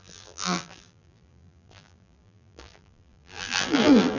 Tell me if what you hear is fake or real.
fake